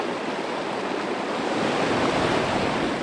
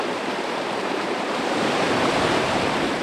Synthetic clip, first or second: second